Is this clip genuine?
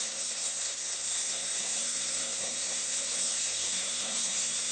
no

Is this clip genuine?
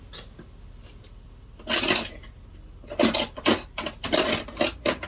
yes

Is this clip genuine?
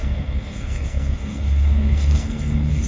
no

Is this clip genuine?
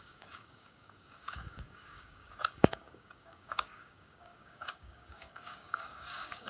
no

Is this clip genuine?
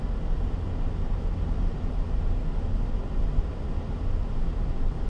yes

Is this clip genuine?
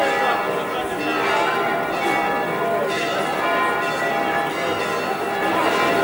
yes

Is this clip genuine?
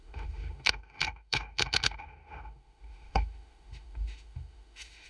no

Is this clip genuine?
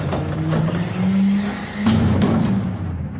yes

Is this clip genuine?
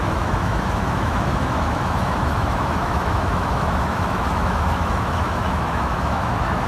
no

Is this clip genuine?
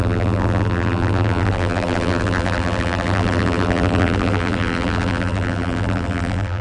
no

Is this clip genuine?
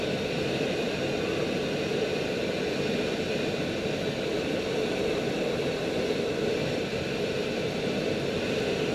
yes